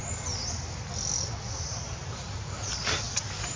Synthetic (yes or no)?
no